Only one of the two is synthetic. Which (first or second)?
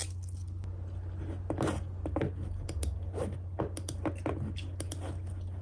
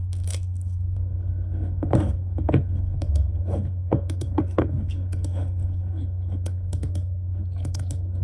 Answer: second